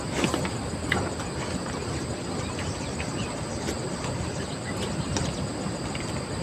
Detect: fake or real real